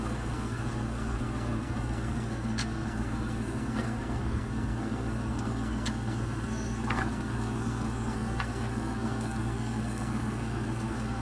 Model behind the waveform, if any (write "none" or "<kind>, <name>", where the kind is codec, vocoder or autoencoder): codec, SNAC